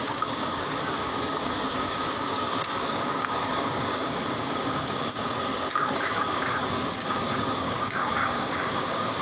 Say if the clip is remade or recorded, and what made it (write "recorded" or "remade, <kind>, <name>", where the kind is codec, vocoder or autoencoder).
remade, codec, DAC